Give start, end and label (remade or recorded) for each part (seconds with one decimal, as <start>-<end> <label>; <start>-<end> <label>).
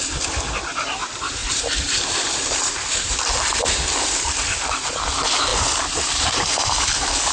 0.0-7.3 recorded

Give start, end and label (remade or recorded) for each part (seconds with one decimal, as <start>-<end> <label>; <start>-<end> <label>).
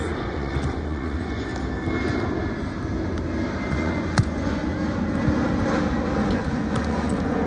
0.0-1.5 remade; 1.5-3.7 recorded; 3.7-4.6 remade; 4.6-6.2 recorded; 6.2-7.5 remade